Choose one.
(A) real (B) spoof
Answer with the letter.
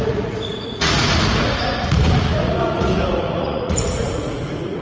B